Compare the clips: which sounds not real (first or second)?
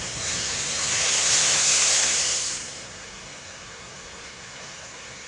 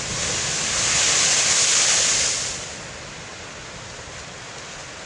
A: first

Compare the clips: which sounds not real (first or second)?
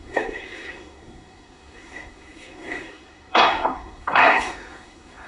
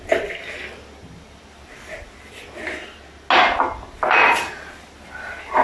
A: first